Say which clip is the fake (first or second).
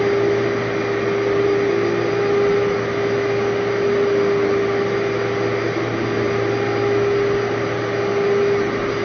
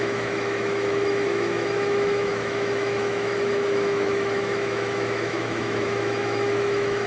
second